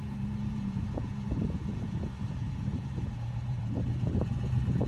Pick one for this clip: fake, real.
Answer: fake